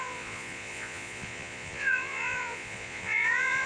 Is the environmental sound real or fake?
fake